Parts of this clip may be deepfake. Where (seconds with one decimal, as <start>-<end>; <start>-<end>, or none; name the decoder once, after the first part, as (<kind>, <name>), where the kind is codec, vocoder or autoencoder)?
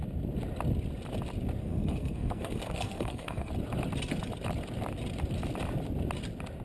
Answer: 1.6-3.5 (codec, SNAC)